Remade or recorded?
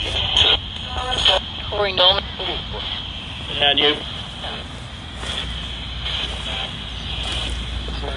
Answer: recorded